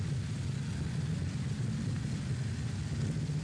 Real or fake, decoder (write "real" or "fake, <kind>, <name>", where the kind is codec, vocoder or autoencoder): real